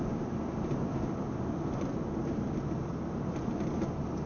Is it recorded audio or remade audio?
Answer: recorded